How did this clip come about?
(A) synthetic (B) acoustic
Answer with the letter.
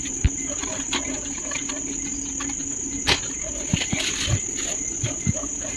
B